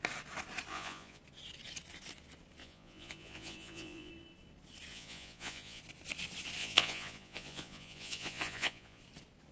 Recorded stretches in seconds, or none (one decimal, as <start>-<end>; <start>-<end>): 0.0-0.7; 1.2-2.6; 4.1-4.9; 5.8-6.6; 9.0-9.5